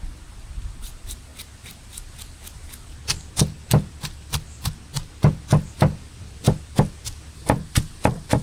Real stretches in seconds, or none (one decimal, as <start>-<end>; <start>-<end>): 0.0-8.4